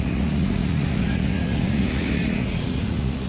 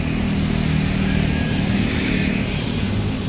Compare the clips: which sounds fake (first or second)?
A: first